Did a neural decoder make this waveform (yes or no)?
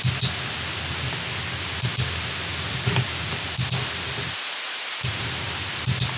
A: no